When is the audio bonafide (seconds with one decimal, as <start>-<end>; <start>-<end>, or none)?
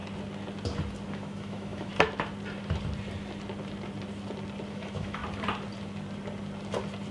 0.0-1.1; 1.9-4.7; 5.2-7.1